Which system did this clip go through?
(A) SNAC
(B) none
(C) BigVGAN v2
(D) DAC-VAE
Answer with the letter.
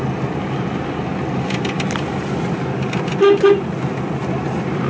B